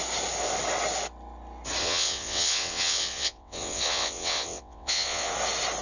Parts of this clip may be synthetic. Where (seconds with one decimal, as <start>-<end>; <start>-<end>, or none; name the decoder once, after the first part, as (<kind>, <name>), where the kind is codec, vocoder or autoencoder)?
1.8-5.3 (vocoder, WaveNeXt)